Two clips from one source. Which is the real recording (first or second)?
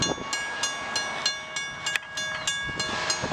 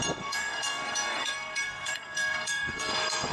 first